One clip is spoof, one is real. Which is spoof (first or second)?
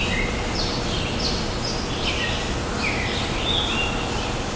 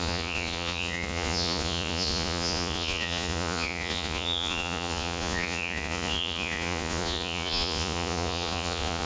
second